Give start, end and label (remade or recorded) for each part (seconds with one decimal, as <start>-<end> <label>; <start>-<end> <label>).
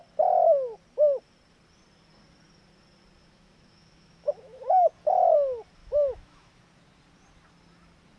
0.0-3.2 recorded; 3.2-4.9 remade; 4.9-5.8 recorded; 5.8-6.5 remade; 6.5-8.2 recorded